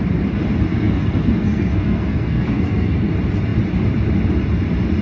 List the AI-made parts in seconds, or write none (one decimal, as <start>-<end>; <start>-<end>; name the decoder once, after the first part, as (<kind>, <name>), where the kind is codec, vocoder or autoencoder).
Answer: 0.7-3.1 (codec, SNAC)